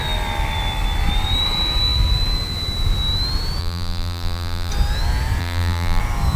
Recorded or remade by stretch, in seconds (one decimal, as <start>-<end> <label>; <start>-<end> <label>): 0.0-3.6 recorded; 3.6-4.7 remade; 4.7-5.4 recorded; 5.4-6.0 remade; 6.0-6.4 recorded